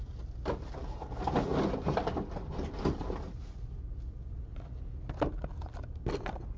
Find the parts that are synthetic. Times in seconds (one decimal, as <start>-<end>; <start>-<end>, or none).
none